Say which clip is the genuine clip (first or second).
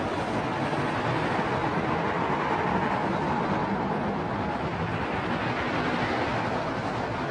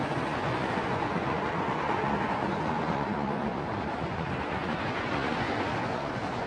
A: first